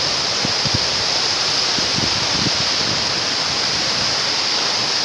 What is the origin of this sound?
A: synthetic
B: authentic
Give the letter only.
B